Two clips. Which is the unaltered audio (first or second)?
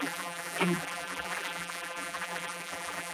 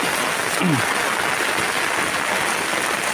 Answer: second